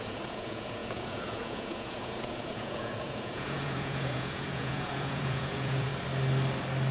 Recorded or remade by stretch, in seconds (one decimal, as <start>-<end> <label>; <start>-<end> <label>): 0.0-5.9 remade; 5.9-6.9 recorded